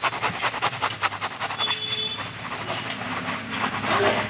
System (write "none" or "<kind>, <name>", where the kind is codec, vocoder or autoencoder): none